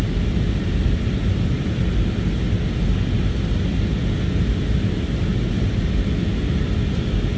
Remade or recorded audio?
recorded